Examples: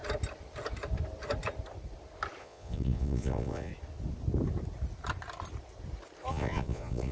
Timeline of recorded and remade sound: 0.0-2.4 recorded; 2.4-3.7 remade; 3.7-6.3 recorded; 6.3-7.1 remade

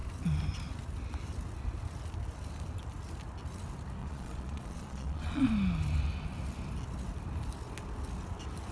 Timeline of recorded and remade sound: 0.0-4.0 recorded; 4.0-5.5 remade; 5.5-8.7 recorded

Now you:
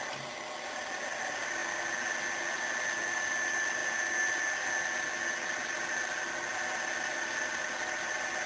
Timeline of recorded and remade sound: 0.0-8.5 recorded

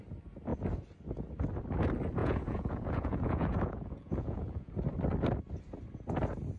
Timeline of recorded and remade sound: 0.0-2.2 recorded; 2.2-4.7 remade; 4.7-6.6 recorded

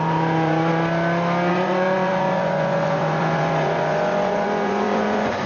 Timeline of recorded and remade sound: 0.0-0.7 remade; 0.7-1.5 recorded; 1.5-5.5 remade

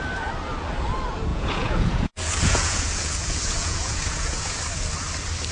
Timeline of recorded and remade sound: 0.0-1.3 recorded; 1.3-4.6 remade; 4.6-5.5 recorded